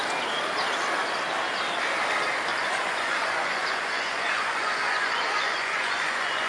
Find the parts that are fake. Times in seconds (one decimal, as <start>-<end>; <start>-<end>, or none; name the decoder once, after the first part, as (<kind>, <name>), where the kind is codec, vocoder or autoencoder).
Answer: 2.5-6.5 (vocoder, Vocos)